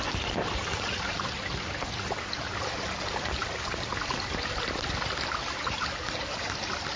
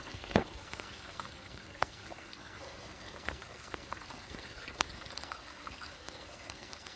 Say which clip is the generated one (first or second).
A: second